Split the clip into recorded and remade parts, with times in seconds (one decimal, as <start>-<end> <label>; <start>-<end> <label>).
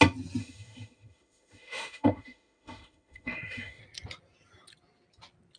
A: 0.0-0.4 recorded; 0.4-3.8 remade; 3.8-5.6 recorded